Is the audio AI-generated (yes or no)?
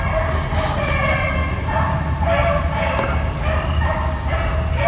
no